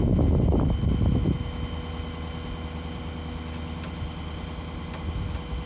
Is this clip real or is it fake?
real